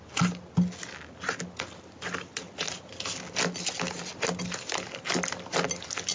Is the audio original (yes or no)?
yes